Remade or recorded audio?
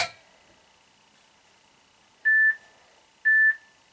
recorded